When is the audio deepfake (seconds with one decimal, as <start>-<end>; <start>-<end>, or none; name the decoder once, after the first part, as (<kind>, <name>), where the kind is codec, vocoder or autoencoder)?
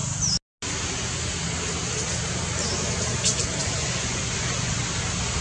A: 3.6-4.8 (vocoder, Vocos)